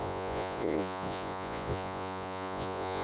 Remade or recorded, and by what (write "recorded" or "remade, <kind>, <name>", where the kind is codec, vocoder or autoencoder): remade, vocoder, Vocos